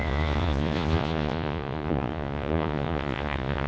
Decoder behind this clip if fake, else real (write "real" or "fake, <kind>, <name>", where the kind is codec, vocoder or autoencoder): fake, vocoder, Vocos